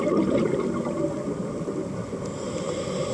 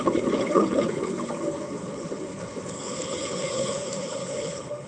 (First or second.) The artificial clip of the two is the second